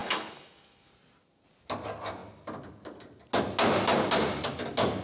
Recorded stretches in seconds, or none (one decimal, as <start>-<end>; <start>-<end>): 0.9-5.0